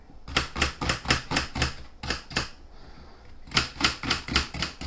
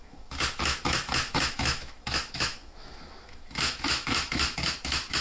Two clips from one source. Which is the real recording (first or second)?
first